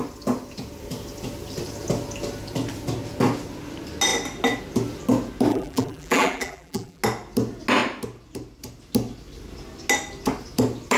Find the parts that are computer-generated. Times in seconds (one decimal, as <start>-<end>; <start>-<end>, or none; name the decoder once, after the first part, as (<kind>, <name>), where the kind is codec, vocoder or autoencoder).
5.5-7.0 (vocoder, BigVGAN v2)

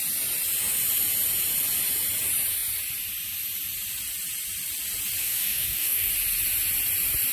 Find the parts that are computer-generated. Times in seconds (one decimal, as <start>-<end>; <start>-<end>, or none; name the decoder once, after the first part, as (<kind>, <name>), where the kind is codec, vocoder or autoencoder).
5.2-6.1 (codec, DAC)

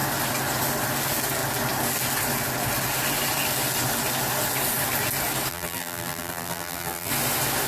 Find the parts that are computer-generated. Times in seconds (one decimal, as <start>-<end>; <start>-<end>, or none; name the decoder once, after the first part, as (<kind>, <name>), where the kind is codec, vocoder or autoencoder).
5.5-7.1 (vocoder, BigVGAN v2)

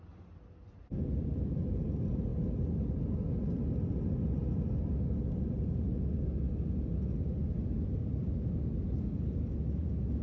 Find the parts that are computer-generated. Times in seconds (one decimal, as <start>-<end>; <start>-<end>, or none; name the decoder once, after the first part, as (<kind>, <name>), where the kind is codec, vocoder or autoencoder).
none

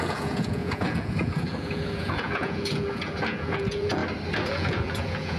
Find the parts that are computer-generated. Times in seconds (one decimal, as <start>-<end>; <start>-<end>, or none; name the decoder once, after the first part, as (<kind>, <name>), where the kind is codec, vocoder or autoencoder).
0.0-4.0 (vocoder, Vocos); 4.5-5.4

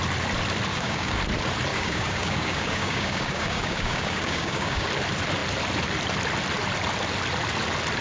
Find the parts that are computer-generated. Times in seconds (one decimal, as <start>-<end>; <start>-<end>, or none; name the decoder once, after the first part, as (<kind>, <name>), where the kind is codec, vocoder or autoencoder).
0.7-1.2 (codec, DAC); 1.7-4.9

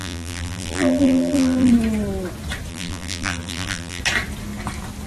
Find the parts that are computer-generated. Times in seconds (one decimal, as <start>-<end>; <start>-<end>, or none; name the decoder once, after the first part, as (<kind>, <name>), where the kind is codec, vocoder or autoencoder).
0.0-1.7 (vocoder, BigVGAN v2); 2.7-4.0

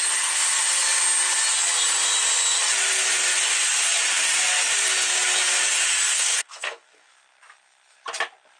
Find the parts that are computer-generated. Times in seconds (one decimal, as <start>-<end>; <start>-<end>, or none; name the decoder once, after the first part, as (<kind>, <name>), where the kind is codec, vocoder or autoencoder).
6.1-7.1 (codec, SNAC)